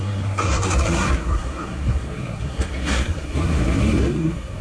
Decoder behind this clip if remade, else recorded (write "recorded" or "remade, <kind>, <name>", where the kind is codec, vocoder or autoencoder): remade, codec, SNAC